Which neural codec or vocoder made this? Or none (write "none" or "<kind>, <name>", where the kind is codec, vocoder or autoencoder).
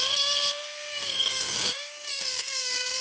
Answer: codec, SNAC